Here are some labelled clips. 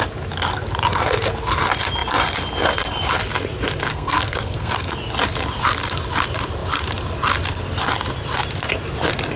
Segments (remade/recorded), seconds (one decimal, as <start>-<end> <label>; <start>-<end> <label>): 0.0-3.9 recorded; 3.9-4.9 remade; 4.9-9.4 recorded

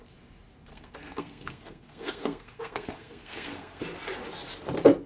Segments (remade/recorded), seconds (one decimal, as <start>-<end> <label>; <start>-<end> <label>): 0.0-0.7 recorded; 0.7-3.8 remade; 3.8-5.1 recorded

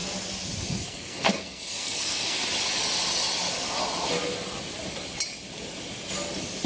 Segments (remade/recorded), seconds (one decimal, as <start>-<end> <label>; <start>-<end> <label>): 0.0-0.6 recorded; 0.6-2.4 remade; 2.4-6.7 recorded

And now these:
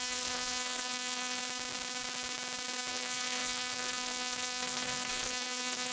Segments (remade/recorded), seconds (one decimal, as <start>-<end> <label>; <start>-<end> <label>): 0.0-1.4 remade; 1.4-2.9 recorded; 2.9-5.9 remade